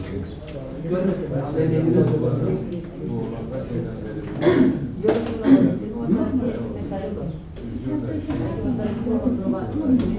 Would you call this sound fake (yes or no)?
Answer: no